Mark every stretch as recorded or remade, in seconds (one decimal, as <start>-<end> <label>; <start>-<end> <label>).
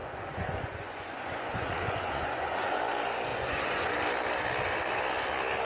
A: 0.0-2.8 remade; 2.8-3.3 recorded; 3.3-3.9 remade; 3.9-5.6 recorded